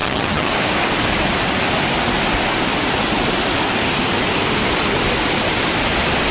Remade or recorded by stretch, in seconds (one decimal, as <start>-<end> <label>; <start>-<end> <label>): 0.0-0.5 remade; 0.5-6.3 recorded